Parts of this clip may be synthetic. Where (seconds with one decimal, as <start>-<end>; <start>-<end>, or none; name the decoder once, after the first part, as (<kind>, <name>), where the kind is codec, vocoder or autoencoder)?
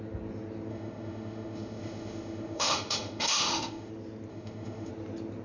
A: 0.7-3.9 (autoencoder, DAC-VAE); 4.3-4.9